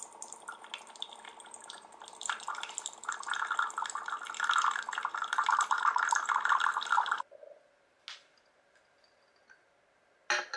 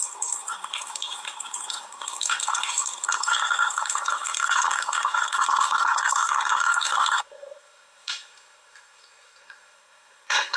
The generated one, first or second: second